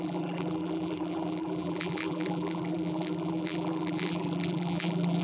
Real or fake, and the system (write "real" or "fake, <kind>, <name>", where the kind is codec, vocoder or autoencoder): fake, vocoder, BigVGAN v2